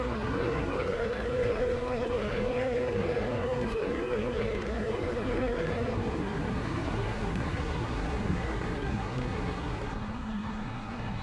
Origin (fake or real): fake